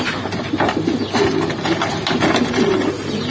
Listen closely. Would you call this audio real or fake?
real